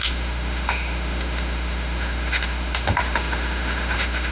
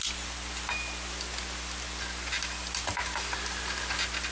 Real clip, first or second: second